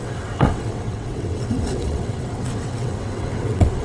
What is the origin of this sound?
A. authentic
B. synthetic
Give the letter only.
B